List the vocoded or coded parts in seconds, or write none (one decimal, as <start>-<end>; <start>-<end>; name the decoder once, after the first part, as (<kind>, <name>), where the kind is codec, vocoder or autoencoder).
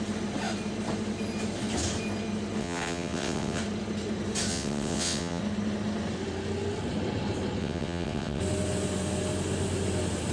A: 2.6-3.6 (vocoder, WaveNeXt); 4.5-5.4; 7.6-8.4